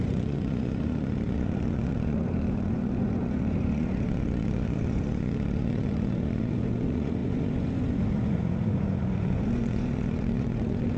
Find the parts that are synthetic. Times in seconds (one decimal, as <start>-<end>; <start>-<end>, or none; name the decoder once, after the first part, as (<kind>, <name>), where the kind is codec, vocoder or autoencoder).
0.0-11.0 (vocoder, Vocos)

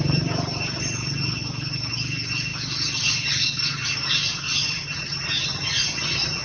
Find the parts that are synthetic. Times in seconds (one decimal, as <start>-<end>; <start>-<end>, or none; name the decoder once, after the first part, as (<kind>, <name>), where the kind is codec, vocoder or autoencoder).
none

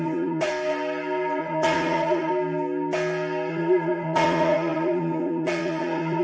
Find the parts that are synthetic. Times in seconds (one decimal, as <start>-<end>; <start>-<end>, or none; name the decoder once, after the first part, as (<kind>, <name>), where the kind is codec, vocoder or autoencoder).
0.0-0.5 (vocoder, Vocos); 1.4-2.3; 3.5-6.2

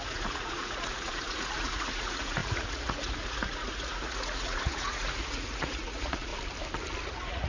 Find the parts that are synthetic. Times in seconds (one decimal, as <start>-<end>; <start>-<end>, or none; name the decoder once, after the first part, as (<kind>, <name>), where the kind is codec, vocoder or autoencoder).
0.0-6.3 (vocoder, Vocos); 7.1-7.5

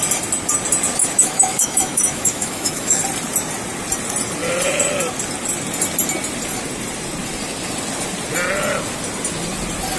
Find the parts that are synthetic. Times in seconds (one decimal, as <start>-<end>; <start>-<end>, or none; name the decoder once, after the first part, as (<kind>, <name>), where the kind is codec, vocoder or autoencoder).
1.0-3.0 (autoencoder, DAC-VAE)

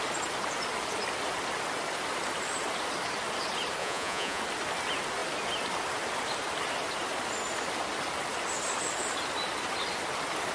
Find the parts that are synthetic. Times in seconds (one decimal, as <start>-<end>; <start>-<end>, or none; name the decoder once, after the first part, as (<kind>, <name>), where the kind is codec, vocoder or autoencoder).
3.8-4.4 (vocoder, Vocos)

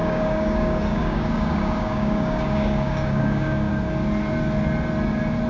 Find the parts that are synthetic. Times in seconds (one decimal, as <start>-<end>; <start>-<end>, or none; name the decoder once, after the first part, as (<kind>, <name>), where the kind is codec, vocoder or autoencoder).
0.0-3.7 (codec, DAC)